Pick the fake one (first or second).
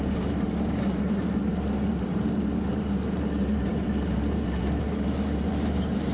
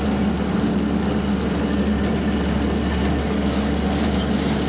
first